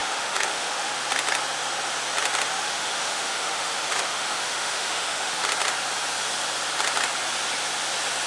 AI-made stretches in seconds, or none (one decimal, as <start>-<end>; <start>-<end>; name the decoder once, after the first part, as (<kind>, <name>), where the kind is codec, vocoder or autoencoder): 0.0-0.9 (autoencoder, DAC-VAE); 2.5-5.4